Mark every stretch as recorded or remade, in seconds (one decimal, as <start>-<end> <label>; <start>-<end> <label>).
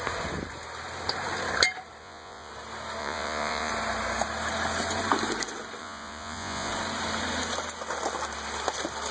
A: 0.0-2.0 recorded; 2.0-2.5 remade; 2.5-3.0 recorded; 3.0-3.7 remade; 3.7-5.8 recorded; 5.8-6.7 remade; 6.7-9.1 recorded